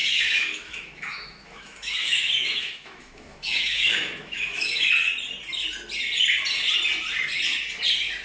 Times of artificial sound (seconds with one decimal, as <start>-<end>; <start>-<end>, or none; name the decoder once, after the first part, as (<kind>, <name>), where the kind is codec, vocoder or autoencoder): 0.0-4.9 (autoencoder, DAC-VAE)